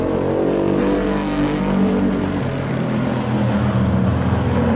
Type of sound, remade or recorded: recorded